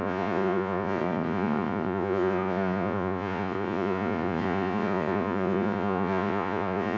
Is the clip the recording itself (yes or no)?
no